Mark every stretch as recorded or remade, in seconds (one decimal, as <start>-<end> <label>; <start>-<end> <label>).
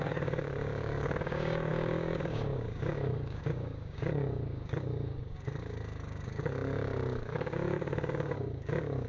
0.0-9.1 remade